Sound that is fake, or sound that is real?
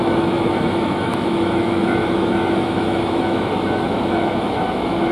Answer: fake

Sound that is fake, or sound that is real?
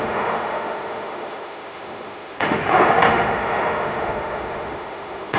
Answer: fake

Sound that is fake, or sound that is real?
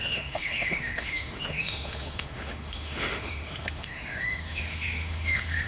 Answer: fake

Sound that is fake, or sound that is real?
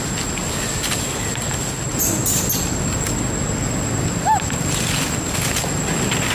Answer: real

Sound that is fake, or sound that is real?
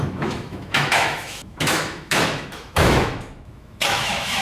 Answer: fake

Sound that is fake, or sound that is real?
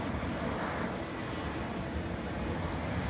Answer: real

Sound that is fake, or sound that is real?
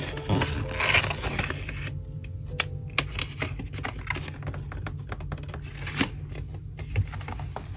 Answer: real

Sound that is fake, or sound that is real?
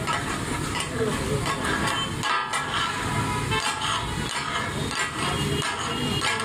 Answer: real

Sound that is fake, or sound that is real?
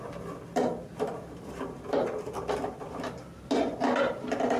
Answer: real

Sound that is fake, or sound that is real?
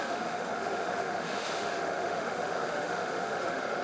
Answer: fake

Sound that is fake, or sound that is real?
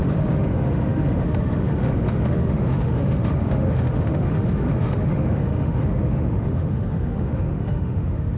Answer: fake